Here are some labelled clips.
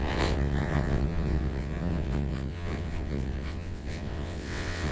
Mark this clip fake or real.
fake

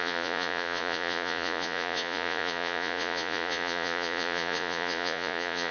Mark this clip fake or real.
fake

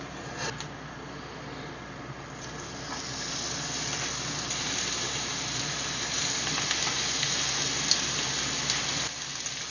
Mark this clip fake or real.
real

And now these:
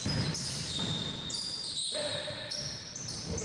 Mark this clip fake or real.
fake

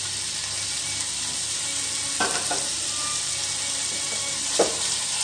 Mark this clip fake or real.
real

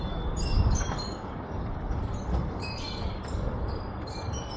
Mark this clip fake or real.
fake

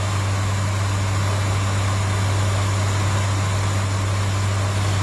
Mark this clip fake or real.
real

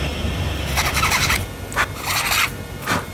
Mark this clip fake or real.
real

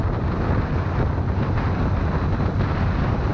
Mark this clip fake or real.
real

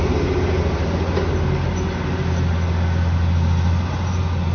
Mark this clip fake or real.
real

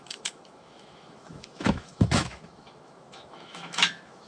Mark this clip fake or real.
fake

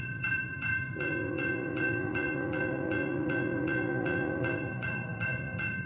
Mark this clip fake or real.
fake